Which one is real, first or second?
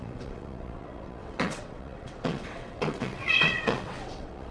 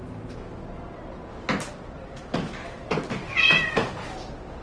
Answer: second